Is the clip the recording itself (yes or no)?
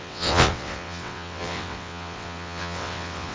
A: no